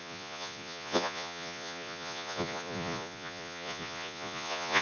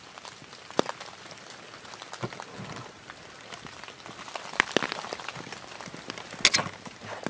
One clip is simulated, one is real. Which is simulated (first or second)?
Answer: first